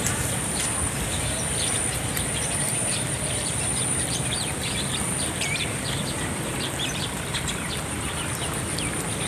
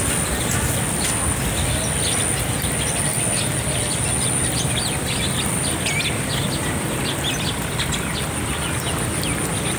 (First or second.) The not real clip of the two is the first